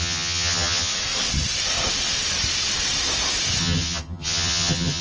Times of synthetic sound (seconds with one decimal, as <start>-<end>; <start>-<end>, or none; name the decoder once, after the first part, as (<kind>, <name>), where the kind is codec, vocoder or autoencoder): 0.0-0.9 (vocoder, HiFi-GAN); 3.6-5.0